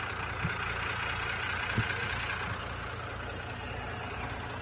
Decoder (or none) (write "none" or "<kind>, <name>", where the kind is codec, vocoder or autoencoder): none